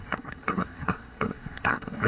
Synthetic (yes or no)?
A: yes